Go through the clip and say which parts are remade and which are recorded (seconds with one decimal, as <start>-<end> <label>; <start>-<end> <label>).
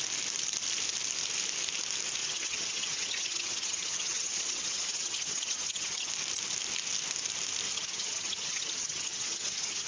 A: 0.0-2.2 recorded; 2.2-6.1 remade; 6.1-7.7 recorded; 7.7-9.9 remade